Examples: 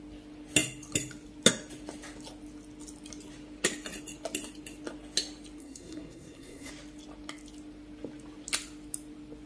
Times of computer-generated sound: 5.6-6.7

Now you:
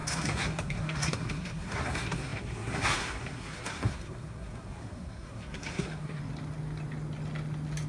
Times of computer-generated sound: 0.0-6.2

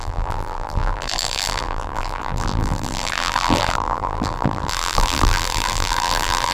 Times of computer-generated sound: 0.0-6.5

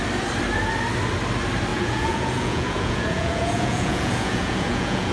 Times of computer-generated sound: 1.7-5.1

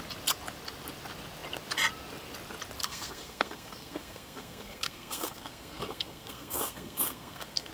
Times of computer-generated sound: 2.8-7.7

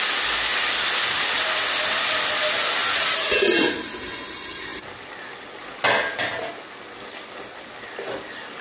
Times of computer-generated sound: none

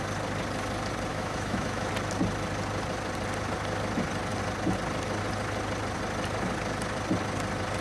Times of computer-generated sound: 1.1-1.9

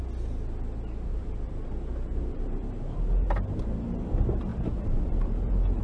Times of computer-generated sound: 1.1-3.6; 4.5-5.8